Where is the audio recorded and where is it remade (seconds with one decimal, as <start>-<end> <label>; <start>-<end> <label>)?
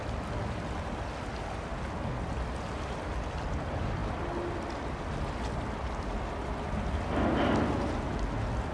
0.0-8.7 recorded